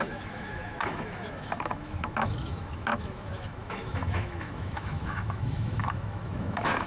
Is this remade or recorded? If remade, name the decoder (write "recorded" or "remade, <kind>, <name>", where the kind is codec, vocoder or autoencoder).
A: remade, autoencoder, DAC-VAE